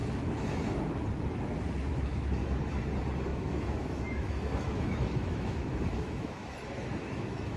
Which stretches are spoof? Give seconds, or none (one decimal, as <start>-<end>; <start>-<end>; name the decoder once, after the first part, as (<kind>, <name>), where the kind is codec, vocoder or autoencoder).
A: 0.0-0.8 (autoencoder, DAC-VAE); 1.9-2.8; 3.3-7.6

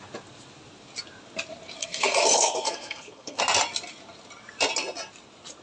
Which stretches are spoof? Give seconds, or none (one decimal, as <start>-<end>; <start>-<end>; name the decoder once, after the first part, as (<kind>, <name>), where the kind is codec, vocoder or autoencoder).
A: 1.8-3.4 (codec, SNAC)

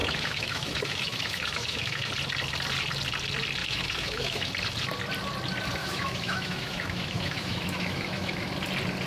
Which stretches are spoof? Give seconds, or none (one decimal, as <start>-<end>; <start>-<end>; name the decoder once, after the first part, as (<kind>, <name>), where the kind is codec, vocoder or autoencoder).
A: 0.0-2.1 (autoencoder, DAC-VAE); 3.6-4.5; 5.8-8.5

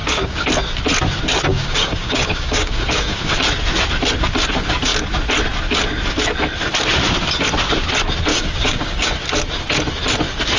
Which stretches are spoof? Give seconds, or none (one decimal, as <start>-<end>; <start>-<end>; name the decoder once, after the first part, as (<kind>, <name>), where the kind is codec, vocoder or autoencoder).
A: 0.0-0.5 (codec, DAC); 1.5-3.3; 8.3-9.1

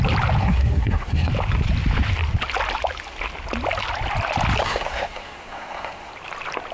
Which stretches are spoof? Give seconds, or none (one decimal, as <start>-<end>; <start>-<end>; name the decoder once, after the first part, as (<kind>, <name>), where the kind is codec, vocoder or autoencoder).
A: 0.4-1.3 (codec, SNAC); 4.6-6.1